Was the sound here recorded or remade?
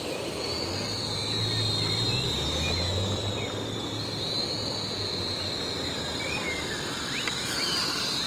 recorded